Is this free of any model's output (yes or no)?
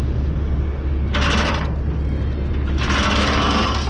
yes